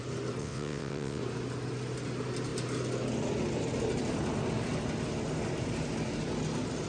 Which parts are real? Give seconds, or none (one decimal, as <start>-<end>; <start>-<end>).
0.0-0.4; 1.2-6.9